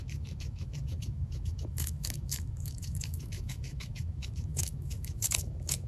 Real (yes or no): no